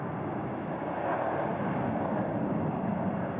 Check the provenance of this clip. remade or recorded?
recorded